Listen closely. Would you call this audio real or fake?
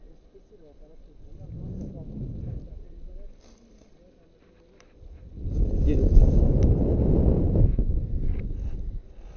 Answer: real